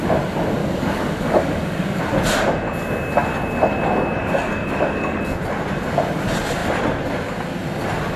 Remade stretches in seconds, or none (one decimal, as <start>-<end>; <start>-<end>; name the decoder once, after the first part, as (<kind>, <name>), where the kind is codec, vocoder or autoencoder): 0.6-2.0 (codec, DAC); 4.2-5.2